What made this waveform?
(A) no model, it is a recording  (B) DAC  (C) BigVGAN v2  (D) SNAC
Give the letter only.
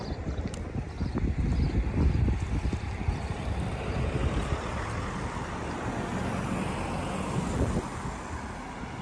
A